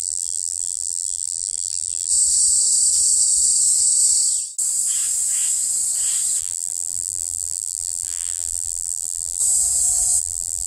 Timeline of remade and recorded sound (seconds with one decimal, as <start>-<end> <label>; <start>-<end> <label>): 0.0-2.1 remade; 2.1-6.4 recorded; 6.4-9.4 remade; 9.4-10.2 recorded; 10.2-10.7 remade